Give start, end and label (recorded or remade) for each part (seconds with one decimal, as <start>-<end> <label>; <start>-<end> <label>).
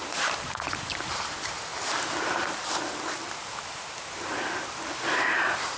0.0-1.7 remade; 1.7-5.1 recorded; 5.1-5.8 remade